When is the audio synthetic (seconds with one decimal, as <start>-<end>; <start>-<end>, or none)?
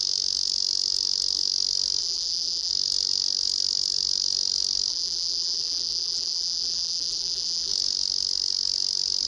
2.0-2.7; 4.9-7.7